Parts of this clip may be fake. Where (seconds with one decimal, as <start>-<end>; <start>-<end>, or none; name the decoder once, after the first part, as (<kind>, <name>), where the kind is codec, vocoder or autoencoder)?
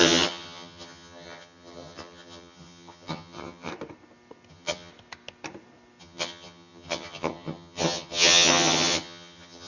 0.0-3.7 (vocoder, HiFi-GAN); 4.5-4.9; 6.0-9.7